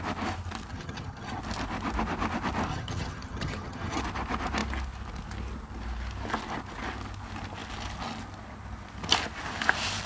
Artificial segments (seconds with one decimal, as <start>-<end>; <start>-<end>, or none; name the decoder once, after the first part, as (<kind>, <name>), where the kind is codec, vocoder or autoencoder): 0.7-1.4 (vocoder, HiFi-GAN); 2.7-4.0